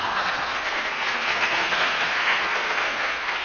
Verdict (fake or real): fake